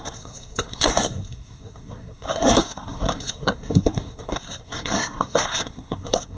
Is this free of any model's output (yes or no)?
no